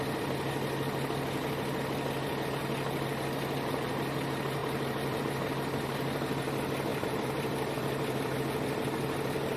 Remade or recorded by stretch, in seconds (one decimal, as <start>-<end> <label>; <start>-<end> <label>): 0.0-4.6 recorded; 4.6-5.2 remade; 5.2-6.9 recorded; 6.9-8.4 remade; 8.4-9.6 recorded